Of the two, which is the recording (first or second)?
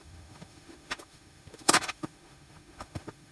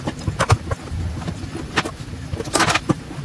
second